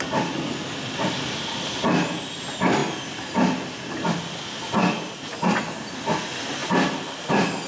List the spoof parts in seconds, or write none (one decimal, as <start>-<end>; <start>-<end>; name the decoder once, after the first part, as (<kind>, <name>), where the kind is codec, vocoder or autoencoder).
6.6-7.2 (vocoder, BigVGAN v2)